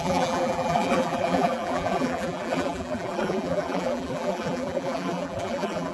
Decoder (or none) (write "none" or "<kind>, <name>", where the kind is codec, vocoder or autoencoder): vocoder, BigVGAN v2